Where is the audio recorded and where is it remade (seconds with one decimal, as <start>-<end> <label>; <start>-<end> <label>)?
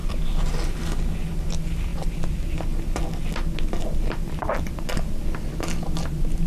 0.0-6.5 recorded